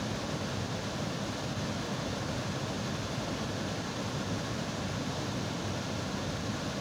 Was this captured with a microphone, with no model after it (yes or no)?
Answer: yes